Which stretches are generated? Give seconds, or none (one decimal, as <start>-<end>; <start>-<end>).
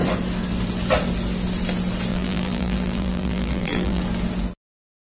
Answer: 2.1-4.0